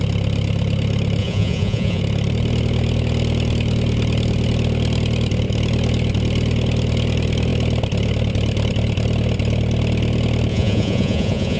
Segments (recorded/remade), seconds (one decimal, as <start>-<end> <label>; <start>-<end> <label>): 0.0-1.2 recorded; 1.2-2.0 remade; 2.0-10.5 recorded; 10.5-11.6 remade